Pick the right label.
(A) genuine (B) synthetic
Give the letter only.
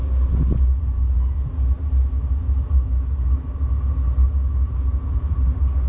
A